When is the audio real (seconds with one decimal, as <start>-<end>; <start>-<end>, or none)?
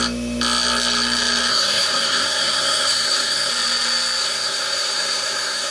0.0-1.5; 3.5-4.2